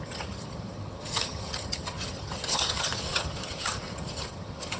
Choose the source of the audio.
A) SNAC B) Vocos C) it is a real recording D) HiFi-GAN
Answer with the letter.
D